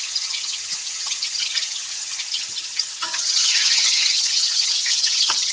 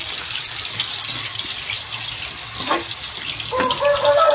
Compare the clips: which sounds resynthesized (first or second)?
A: first